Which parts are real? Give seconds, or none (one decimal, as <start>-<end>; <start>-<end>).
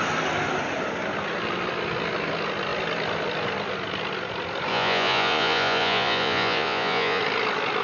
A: 0.0-4.7; 7.2-7.8